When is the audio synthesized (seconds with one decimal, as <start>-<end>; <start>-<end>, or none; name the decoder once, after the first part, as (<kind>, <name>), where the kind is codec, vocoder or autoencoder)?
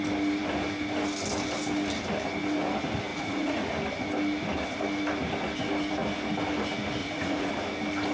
3.1-3.7 (vocoder, Vocos); 7.0-7.5